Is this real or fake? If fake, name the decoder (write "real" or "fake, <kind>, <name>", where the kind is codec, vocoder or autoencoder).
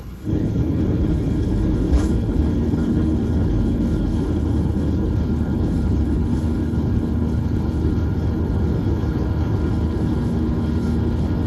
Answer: fake, codec, HILCodec